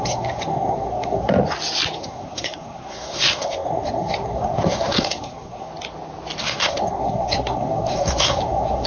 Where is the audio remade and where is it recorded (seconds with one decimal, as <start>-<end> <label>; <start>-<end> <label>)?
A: 0.0-1.3 remade; 1.3-2.0 recorded; 2.0-5.7 remade; 5.7-6.4 recorded; 6.4-8.9 remade